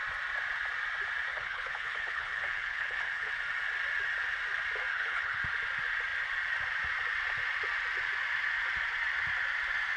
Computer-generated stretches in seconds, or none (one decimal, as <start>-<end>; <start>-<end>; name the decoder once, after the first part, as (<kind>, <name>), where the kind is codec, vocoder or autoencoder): 1.3-3.3 (codec, HILCodec); 4.9-5.4